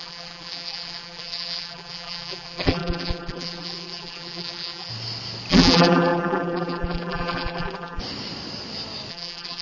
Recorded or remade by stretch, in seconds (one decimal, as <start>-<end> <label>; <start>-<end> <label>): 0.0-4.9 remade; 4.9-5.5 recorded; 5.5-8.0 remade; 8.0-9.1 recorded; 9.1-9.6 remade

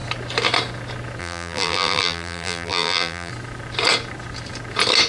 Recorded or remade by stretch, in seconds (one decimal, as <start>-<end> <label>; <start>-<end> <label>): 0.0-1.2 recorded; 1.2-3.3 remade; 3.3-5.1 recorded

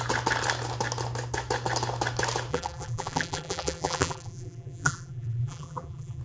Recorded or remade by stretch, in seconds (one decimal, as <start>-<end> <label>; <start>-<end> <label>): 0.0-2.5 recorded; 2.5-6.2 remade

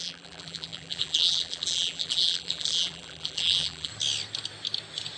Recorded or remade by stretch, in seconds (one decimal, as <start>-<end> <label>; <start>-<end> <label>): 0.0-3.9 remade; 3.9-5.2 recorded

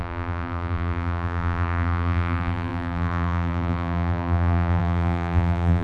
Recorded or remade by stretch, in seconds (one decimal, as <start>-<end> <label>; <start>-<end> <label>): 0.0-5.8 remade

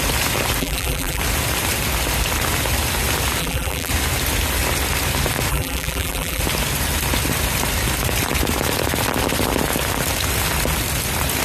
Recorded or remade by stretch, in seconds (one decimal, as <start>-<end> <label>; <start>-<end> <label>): 0.0-0.6 recorded; 0.6-1.2 remade; 1.2-3.4 recorded; 3.4-3.9 remade; 3.9-5.5 recorded; 5.5-6.4 remade; 6.4-11.4 recorded

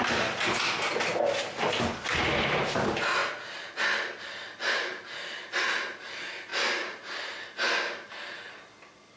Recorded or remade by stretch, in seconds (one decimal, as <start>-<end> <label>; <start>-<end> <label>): 0.0-6.5 recorded; 6.5-8.1 remade; 8.1-9.2 recorded